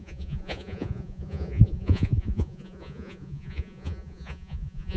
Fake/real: fake